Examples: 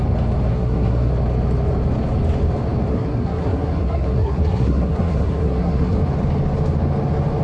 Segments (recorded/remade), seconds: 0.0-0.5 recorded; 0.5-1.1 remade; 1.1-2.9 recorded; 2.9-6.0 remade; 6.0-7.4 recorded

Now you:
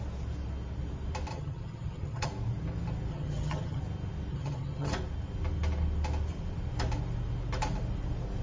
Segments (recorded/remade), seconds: 0.0-1.3 recorded; 1.3-2.3 remade; 2.3-3.1 recorded; 3.1-3.8 remade; 3.8-4.3 recorded; 4.3-4.9 remade; 4.9-8.4 recorded

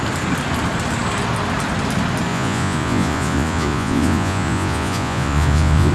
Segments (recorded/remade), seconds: 0.0-2.3 recorded; 2.3-5.9 remade

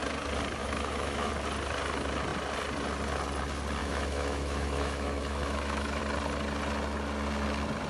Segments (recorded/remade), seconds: 0.0-0.6 recorded; 0.6-1.3 remade; 1.3-3.8 recorded; 3.8-6.0 remade; 6.0-7.9 recorded

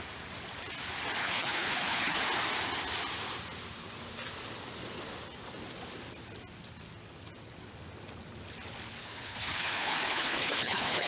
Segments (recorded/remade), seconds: 0.0-1.2 recorded; 1.2-2.2 remade; 2.2-9.0 recorded; 9.0-11.1 remade

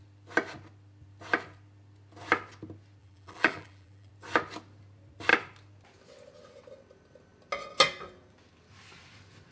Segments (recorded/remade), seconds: 0.0-3.0 recorded; 3.0-4.1 remade; 4.1-9.5 recorded

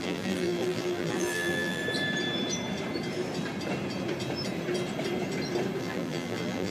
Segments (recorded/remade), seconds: 0.0-1.8 remade; 1.8-5.8 recorded; 5.8-6.7 remade

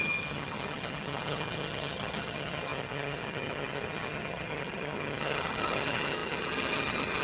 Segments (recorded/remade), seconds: 0.0-7.2 remade